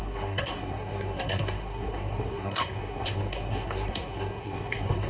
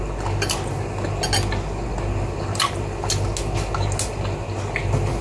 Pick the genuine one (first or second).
second